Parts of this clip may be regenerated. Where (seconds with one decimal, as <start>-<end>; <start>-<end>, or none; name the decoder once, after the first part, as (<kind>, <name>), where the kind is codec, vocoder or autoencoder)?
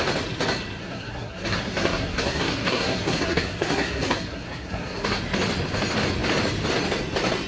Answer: 0.8-5.2 (codec, SNAC)